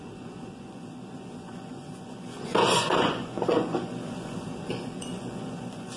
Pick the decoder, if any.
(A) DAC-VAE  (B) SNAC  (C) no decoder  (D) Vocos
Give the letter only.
D